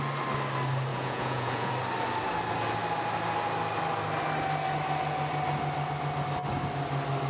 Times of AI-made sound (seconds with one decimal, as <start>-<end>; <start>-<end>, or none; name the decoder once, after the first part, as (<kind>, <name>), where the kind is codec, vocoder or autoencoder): 0.9-1.7 (vocoder, Vocos)